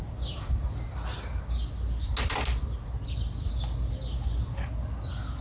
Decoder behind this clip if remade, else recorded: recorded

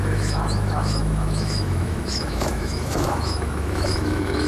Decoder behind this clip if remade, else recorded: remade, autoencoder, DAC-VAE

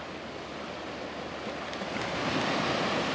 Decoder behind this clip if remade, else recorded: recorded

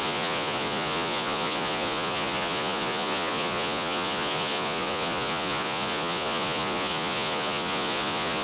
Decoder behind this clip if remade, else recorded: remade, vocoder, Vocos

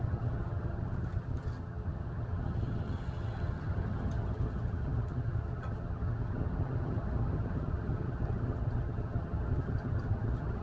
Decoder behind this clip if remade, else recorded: remade, vocoder, HiFi-GAN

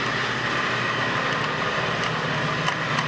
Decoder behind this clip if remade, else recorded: recorded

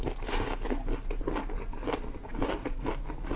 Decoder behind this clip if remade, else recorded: recorded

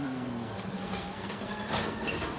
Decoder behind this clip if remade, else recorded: remade, codec, SNAC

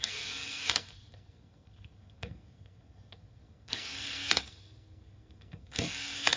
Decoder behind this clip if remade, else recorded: remade, codec, SNAC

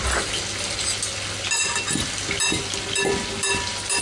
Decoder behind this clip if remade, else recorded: recorded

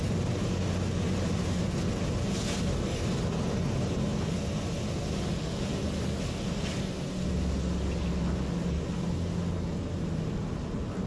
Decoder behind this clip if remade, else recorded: recorded